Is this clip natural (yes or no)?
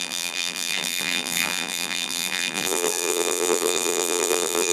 no